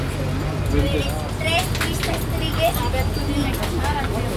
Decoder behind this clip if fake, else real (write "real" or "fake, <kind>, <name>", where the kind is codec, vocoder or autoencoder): real